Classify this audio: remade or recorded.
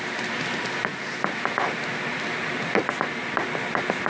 recorded